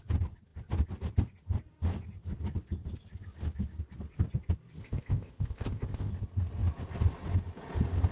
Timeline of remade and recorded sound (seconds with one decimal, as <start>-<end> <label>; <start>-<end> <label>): 0.0-4.8 recorded; 4.8-6.1 remade; 6.1-8.1 recorded

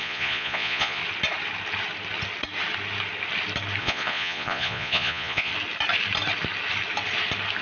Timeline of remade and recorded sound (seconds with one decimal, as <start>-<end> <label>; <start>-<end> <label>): 0.0-1.0 remade; 1.0-3.8 recorded; 3.8-5.5 remade; 5.5-7.6 recorded

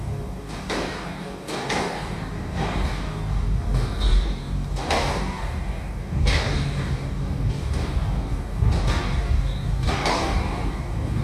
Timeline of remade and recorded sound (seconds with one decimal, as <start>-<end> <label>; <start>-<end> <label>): 0.0-11.2 remade

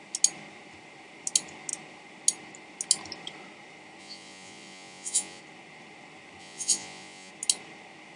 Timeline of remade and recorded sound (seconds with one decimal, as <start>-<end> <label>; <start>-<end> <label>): 0.0-4.0 recorded; 4.0-5.4 remade; 5.4-6.4 recorded; 6.4-7.3 remade; 7.3-8.2 recorded

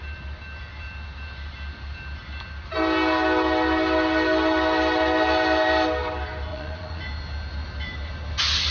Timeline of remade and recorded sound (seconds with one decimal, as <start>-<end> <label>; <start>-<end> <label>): 0.0-6.5 recorded; 6.5-7.0 remade; 7.0-8.7 recorded

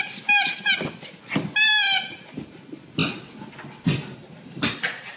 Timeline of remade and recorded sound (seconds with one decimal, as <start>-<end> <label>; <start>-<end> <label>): 0.0-5.2 recorded

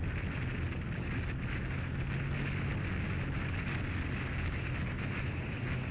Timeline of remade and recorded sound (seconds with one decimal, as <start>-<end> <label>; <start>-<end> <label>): 0.0-5.9 recorded

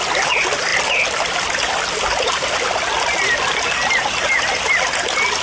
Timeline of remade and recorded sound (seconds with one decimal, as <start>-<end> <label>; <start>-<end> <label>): 0.0-5.4 recorded